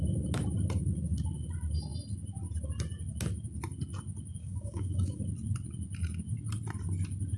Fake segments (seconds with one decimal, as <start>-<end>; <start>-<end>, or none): 4.4-5.2